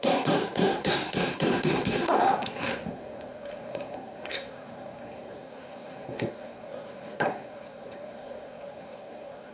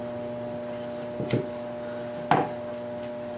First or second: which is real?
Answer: second